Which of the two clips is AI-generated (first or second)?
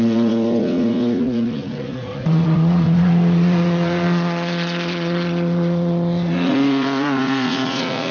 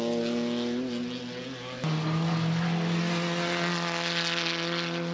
first